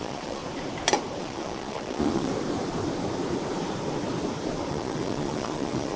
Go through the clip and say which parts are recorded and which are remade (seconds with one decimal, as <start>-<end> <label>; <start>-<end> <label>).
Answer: 0.0-0.4 remade; 0.4-1.2 recorded; 1.2-2.3 remade; 2.3-4.7 recorded; 4.7-6.0 remade